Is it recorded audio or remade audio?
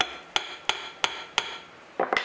recorded